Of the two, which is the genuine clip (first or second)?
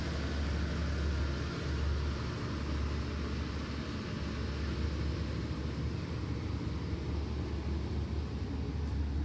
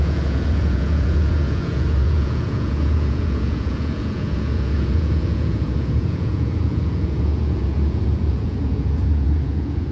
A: first